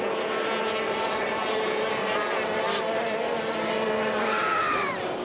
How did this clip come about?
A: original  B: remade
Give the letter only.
A